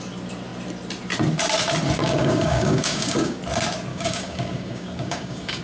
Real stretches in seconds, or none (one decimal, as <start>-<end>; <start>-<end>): 0.0-2.0; 3.4-3.9